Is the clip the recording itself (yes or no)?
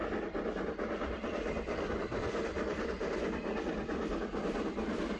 yes